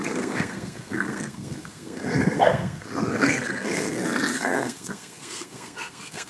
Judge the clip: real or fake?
fake